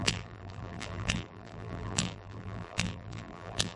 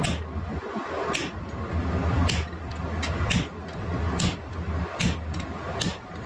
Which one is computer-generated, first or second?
first